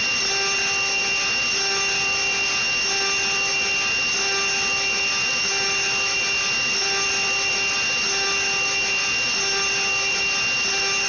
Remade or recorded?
recorded